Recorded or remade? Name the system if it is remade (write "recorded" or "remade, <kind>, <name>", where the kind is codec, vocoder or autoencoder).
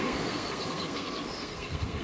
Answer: remade, codec, SNAC